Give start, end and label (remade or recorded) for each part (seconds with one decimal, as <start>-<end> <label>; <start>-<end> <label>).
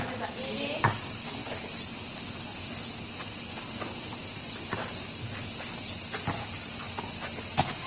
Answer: 0.0-7.9 recorded